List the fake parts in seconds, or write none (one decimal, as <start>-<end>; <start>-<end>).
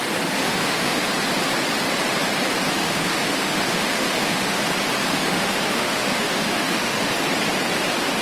0.4-1.0; 2.8-4.6; 5.1-7.1